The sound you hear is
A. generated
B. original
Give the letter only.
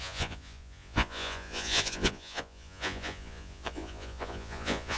A